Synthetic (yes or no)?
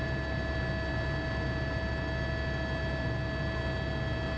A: no